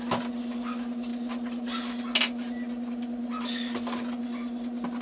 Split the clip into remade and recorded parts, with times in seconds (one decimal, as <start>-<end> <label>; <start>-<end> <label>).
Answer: 0.0-5.0 recorded